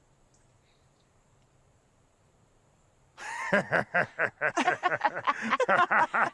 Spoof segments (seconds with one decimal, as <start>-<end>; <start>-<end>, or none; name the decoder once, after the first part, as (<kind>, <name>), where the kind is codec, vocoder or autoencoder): 0.5-3.7 (vocoder, BigVGAN v2)